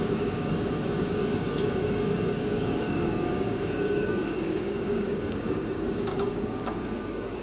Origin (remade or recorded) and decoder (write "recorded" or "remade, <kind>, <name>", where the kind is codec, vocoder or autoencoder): remade, codec, DAC